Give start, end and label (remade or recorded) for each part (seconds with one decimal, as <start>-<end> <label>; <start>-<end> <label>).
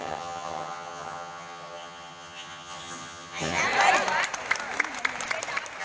0.0-3.6 remade; 3.6-5.8 recorded